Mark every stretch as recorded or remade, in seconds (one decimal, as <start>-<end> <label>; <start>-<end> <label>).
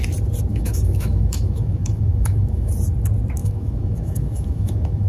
0.0-0.5 recorded; 0.5-2.7 remade; 2.7-3.4 recorded; 3.4-5.1 remade